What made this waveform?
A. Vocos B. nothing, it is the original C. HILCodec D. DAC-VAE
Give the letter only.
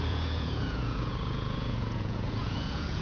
A